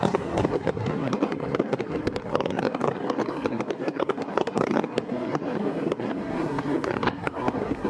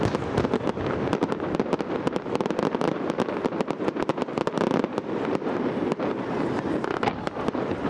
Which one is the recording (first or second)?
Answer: second